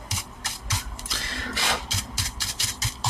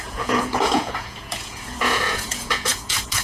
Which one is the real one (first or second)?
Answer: first